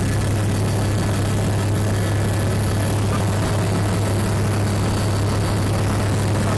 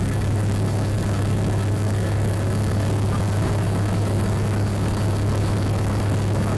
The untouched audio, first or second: first